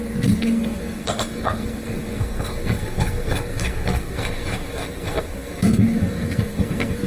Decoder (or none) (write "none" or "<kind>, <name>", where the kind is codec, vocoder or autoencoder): codec, SNAC